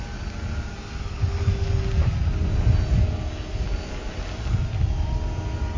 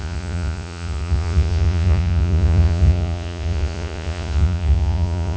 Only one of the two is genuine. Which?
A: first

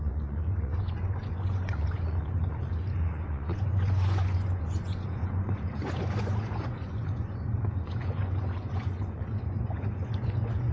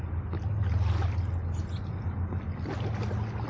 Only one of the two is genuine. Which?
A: second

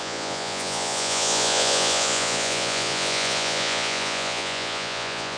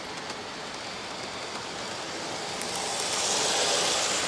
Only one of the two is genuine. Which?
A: second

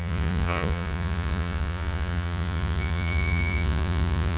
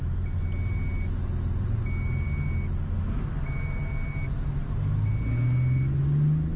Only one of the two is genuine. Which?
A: second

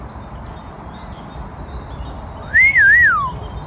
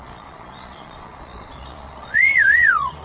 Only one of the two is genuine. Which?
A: first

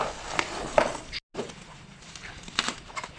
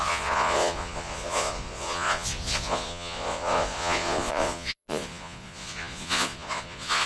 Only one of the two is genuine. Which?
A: first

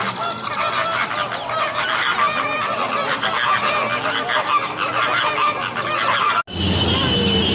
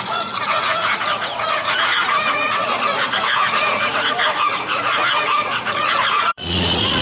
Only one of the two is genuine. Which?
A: first